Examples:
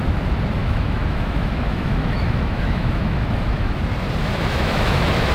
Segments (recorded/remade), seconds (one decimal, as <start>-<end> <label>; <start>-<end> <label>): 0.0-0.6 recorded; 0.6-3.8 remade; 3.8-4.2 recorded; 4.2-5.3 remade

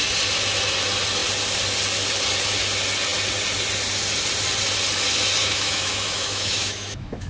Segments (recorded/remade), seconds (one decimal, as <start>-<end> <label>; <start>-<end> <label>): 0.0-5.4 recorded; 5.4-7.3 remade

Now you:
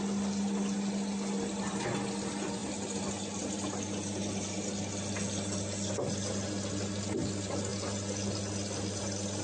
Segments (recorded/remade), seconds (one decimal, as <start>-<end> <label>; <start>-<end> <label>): 0.0-9.4 recorded

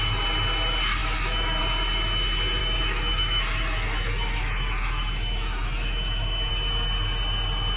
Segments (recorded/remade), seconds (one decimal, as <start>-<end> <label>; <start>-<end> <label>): 0.0-1.0 recorded; 1.0-1.6 remade; 1.6-2.6 recorded; 2.6-6.5 remade; 6.5-7.8 recorded

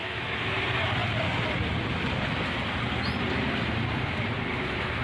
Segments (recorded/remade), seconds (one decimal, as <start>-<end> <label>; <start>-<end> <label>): 0.0-0.5 remade; 0.5-5.0 recorded

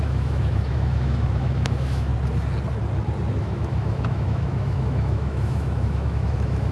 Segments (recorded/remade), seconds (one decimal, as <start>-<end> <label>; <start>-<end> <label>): 0.0-2.1 remade; 2.1-3.4 recorded; 3.4-6.7 remade